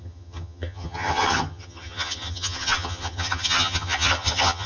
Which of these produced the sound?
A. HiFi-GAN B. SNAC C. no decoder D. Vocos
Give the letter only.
A